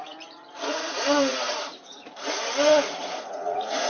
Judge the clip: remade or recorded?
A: remade